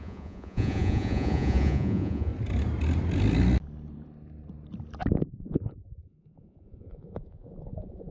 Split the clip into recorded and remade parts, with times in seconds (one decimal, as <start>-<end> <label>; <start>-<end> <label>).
0.0-2.3 remade; 2.3-5.3 recorded; 5.3-8.1 remade